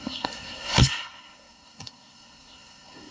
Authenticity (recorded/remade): remade